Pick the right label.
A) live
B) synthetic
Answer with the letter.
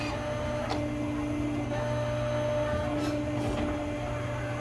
A